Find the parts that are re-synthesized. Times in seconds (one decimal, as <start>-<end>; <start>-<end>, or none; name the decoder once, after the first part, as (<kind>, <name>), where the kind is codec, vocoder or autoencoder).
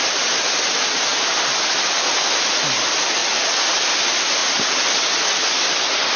none